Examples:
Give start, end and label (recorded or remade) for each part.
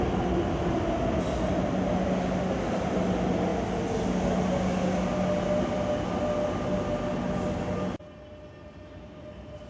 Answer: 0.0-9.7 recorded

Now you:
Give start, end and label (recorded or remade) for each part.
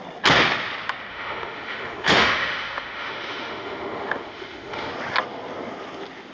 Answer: 0.0-1.1 recorded; 1.1-4.9 remade; 4.9-6.3 recorded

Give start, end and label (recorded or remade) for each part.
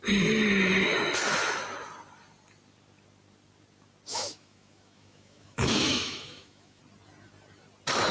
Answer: 0.0-4.1 recorded; 4.1-6.8 remade; 6.8-8.1 recorded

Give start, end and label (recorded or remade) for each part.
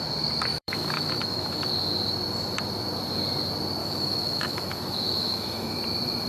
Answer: 0.0-0.5 recorded; 0.5-1.7 remade; 1.7-3.8 recorded; 3.8-5.8 remade; 5.8-6.3 recorded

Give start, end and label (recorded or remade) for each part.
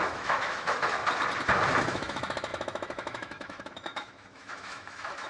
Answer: 0.0-1.0 remade; 1.0-1.8 recorded; 1.8-5.3 remade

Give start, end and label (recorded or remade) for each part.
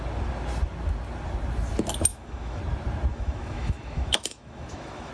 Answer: 0.0-2.1 recorded; 2.1-2.6 remade; 2.6-3.1 recorded; 3.1-5.1 remade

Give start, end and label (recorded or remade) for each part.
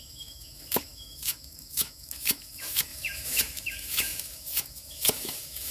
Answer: 0.0-5.7 remade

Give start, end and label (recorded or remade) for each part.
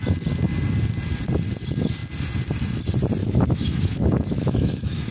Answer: 0.0-3.2 recorded; 3.2-5.1 remade